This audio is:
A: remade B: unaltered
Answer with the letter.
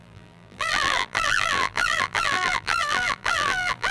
A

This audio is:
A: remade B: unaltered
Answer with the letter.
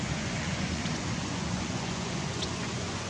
A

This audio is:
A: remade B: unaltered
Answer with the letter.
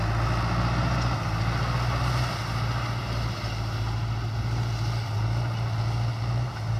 B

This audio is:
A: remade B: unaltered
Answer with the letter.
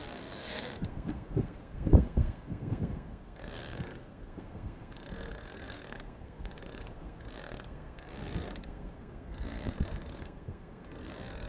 A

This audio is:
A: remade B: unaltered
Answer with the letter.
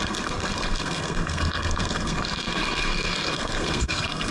A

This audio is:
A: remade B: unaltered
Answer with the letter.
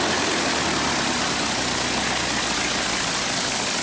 B